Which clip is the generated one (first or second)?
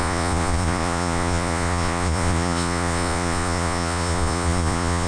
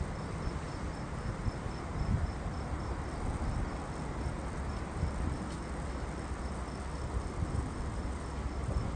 first